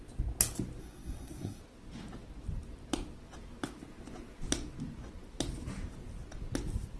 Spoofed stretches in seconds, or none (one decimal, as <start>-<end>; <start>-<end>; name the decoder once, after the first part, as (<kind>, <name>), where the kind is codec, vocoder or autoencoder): 0.8-1.6 (codec, SNAC)